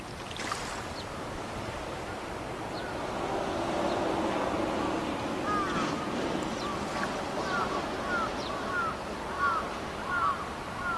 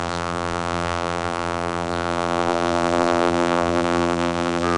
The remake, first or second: second